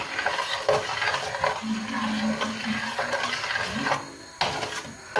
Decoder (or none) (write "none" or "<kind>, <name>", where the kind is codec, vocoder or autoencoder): none